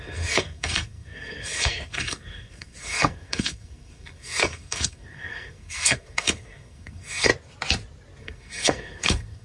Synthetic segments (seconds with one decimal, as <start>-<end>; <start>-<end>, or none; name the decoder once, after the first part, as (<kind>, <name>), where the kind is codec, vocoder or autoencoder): 0.0-7.3 (codec, SNAC); 8.2-9.4